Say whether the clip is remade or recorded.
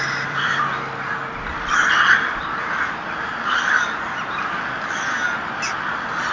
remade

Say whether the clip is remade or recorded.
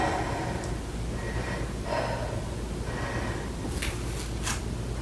recorded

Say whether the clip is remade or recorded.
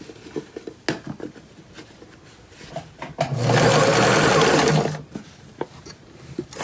recorded